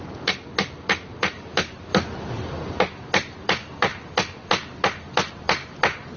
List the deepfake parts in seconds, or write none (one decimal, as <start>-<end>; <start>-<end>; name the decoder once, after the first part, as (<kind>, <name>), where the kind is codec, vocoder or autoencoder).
none